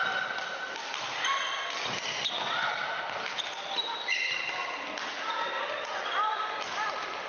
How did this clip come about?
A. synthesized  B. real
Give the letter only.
B